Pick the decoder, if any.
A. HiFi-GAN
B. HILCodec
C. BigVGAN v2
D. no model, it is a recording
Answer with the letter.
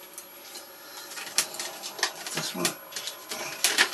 D